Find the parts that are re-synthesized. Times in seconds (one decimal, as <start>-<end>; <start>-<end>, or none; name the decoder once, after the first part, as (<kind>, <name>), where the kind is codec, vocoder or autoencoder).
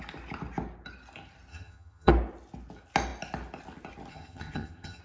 1.5-2.1 (vocoder, HiFi-GAN); 4.1-5.0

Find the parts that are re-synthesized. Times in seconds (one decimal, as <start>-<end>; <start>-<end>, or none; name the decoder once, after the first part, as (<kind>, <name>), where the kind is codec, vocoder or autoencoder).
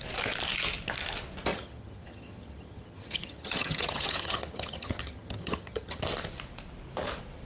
1.5-6.0 (vocoder, HiFi-GAN)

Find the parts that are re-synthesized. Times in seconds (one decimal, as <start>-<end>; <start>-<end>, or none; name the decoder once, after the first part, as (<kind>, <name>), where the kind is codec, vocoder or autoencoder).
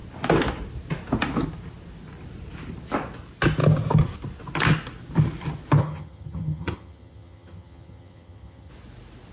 5.8-8.7 (vocoder, HiFi-GAN)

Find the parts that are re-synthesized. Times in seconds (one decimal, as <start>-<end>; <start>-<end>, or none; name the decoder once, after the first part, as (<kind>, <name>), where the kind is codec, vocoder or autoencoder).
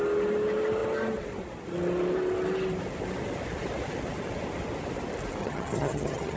5.4-6.4 (vocoder, HiFi-GAN)